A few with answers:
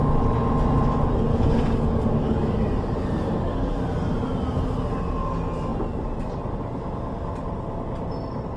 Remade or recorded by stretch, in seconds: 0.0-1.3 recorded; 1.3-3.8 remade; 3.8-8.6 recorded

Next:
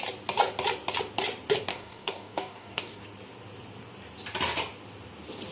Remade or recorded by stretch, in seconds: 0.0-1.7 recorded; 1.7-3.0 remade; 3.0-5.5 recorded

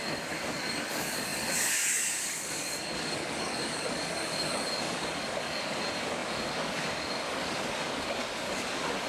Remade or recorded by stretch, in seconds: 0.0-9.1 remade

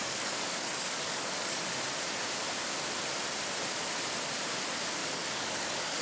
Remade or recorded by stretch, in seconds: 0.0-1.6 remade; 1.6-5.0 recorded; 5.0-6.0 remade

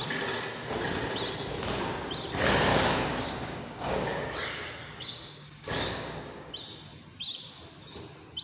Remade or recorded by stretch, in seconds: 0.0-2.7 recorded; 2.7-6.5 remade; 6.5-8.4 recorded

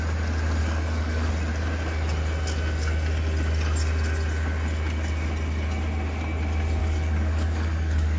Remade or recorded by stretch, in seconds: 0.0-0.6 recorded; 0.6-1.3 remade; 1.3-6.8 recorded; 6.8-8.2 remade

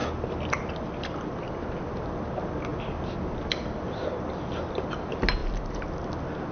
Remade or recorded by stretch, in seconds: 0.0-6.5 recorded